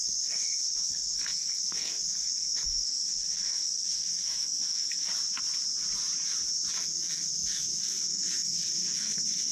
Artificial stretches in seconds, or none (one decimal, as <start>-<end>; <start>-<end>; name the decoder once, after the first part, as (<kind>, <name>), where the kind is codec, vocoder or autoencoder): 0.0-5.1 (codec, SNAC); 6.7-9.5